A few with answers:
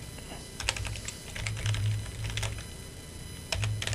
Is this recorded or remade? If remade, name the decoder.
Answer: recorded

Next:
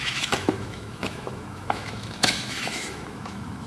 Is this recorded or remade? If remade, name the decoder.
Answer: remade, autoencoder, DAC-VAE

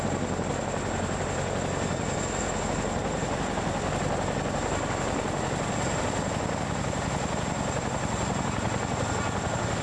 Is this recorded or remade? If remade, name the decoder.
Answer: recorded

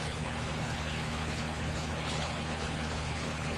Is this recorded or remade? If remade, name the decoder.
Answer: remade, codec, HILCodec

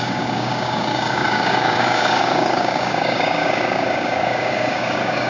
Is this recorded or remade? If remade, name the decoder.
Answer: remade, codec, DAC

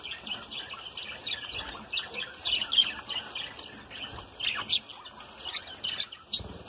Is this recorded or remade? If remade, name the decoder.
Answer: recorded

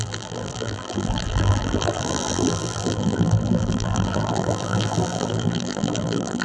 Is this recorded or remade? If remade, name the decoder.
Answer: remade, vocoder, BigVGAN v2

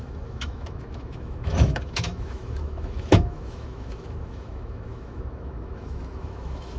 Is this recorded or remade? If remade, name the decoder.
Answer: remade, autoencoder, DAC-VAE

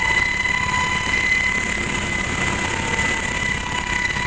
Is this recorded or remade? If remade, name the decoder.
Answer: recorded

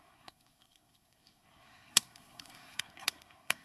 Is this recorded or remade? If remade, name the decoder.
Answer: remade, codec, SNAC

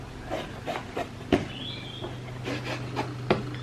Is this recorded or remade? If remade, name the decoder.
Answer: recorded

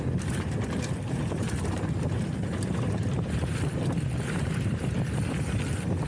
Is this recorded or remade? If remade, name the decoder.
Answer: remade, vocoder, BigVGAN v2